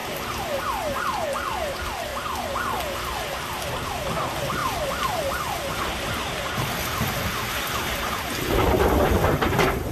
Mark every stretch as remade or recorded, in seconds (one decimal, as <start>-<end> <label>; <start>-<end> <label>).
0.0-4.6 recorded; 4.6-6.0 remade; 6.0-7.3 recorded; 7.3-7.9 remade; 7.9-9.9 recorded